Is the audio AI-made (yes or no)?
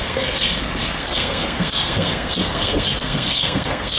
yes